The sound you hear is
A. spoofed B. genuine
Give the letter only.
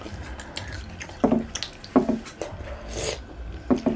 B